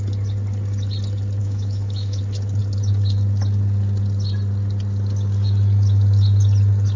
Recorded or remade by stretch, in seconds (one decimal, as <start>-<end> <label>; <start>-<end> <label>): 0.0-1.4 recorded; 1.4-2.2 remade; 2.2-7.0 recorded

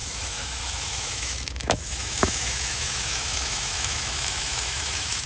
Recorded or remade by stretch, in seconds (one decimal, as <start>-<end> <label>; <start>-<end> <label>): 0.0-5.3 remade

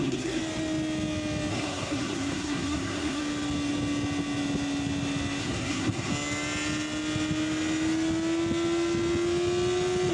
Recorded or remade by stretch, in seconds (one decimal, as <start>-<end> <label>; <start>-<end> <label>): 0.0-0.4 remade; 0.4-1.5 recorded; 1.5-3.2 remade; 3.2-5.4 recorded; 5.4-6.1 remade; 6.1-10.1 recorded

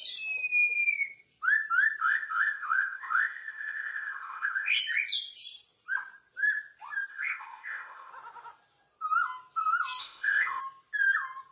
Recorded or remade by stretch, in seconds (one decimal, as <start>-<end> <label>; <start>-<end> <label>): 0.0-2.0 recorded; 2.0-4.8 remade; 4.8-7.1 recorded; 7.1-8.1 remade; 8.1-10.0 recorded; 10.0-10.6 remade; 10.6-11.5 recorded

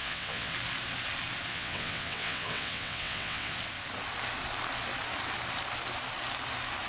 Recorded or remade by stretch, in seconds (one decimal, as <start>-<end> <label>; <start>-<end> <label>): 0.0-0.5 remade; 0.5-1.5 recorded; 1.5-3.5 remade; 3.5-6.9 recorded

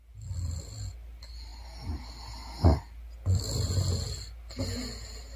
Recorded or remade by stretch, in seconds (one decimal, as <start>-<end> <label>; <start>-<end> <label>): 0.0-5.4 recorded

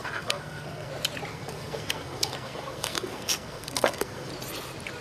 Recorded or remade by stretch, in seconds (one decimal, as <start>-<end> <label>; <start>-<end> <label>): 0.0-0.9 remade; 0.9-1.3 recorded; 1.3-4.3 remade; 4.3-5.0 recorded

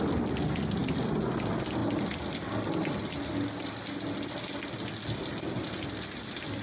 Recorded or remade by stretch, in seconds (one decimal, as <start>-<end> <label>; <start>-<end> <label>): 0.0-6.6 recorded